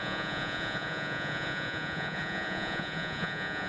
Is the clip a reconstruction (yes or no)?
yes